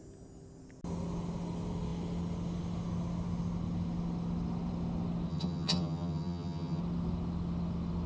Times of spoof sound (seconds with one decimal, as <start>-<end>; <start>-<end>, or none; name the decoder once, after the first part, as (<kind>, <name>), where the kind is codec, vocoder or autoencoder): 5.3-6.8 (vocoder, HiFi-GAN)